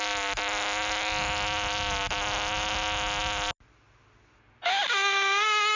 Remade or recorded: recorded